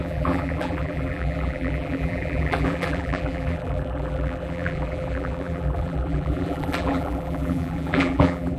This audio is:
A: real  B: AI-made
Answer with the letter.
B